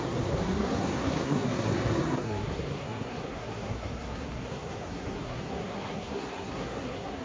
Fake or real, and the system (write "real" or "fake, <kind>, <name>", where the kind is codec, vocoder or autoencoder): fake, codec, SNAC